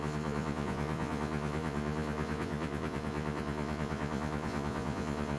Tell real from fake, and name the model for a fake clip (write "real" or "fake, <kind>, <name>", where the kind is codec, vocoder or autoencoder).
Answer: fake, vocoder, Vocos